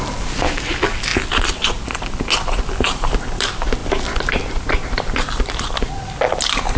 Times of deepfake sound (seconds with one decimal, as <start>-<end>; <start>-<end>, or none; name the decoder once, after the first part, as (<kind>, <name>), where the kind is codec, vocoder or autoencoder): none